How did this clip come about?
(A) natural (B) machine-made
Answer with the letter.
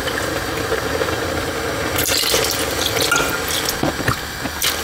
A